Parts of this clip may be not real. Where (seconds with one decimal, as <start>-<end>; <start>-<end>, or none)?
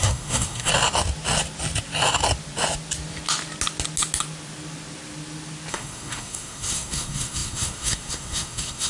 0.0-0.7; 5.7-8.9